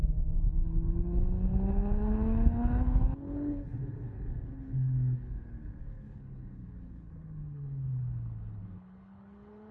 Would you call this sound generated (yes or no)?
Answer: yes